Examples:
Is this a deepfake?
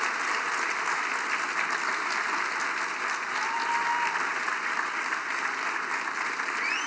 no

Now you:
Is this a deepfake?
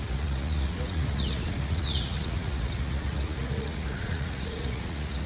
yes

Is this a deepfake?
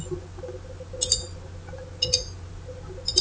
no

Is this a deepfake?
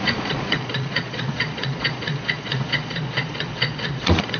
yes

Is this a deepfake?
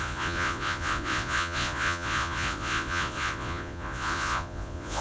yes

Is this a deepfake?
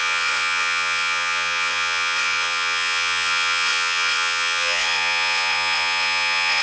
yes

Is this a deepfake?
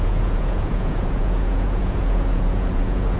yes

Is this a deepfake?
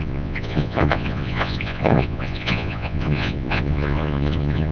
yes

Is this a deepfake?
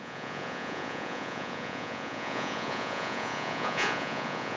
yes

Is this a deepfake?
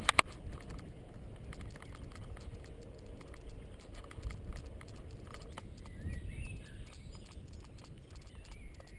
no